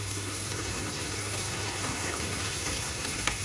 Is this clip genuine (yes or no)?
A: no